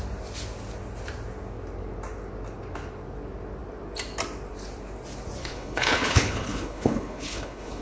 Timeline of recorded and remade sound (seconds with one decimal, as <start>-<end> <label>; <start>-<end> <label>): 0.0-5.4 recorded; 5.4-7.8 remade